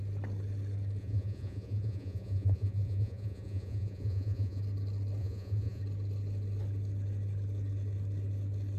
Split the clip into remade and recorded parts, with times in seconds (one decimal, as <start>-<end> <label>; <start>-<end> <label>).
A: 0.0-1.0 recorded; 1.0-4.6 remade; 4.6-5.2 recorded; 5.2-5.8 remade; 5.8-8.8 recorded